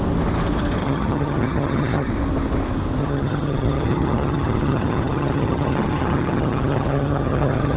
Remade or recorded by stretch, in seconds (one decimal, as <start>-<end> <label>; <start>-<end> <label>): 0.0-0.8 recorded; 0.8-2.1 remade; 2.1-3.0 recorded; 3.0-7.8 remade